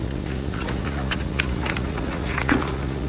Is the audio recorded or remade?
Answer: remade